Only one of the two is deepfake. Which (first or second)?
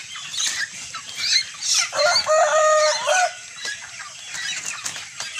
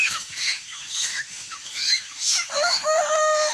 second